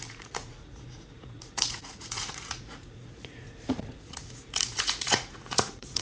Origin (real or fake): fake